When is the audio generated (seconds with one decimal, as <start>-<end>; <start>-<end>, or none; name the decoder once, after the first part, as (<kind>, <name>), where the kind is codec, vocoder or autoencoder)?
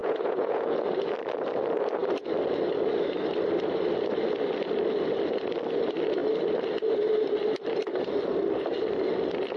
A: 0.0-0.8 (vocoder, Vocos)